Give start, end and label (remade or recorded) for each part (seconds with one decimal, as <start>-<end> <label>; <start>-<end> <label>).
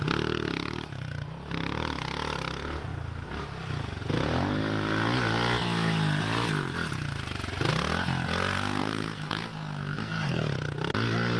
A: 0.0-8.8 recorded; 8.8-10.4 remade; 10.4-11.4 recorded